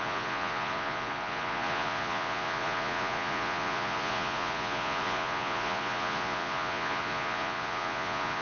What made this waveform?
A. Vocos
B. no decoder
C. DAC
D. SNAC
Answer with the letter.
A